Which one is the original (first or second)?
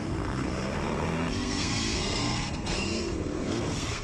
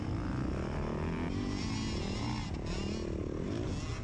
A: second